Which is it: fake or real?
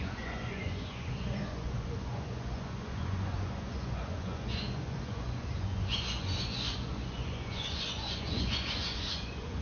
fake